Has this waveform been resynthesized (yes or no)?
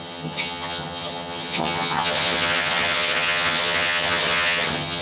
yes